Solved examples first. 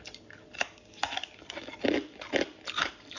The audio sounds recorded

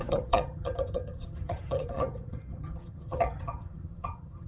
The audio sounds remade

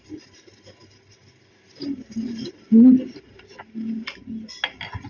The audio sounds recorded